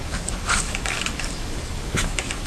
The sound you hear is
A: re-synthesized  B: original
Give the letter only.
A